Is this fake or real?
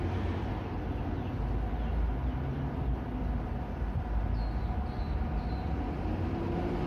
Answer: real